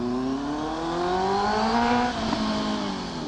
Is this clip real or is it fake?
real